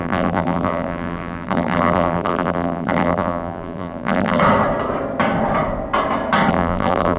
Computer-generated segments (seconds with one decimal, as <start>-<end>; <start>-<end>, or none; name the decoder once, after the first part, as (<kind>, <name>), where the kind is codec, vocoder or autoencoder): 0.0-4.4 (vocoder, BigVGAN v2); 6.5-7.2